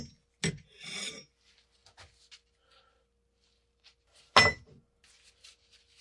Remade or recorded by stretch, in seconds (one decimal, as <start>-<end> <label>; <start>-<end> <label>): 0.0-6.0 recorded